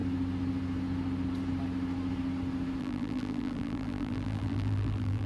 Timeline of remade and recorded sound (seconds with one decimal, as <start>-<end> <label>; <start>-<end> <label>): 0.0-2.8 recorded; 2.8-5.3 remade